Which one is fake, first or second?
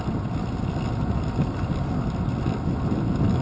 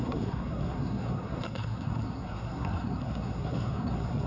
second